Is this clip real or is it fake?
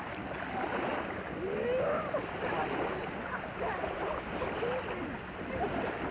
real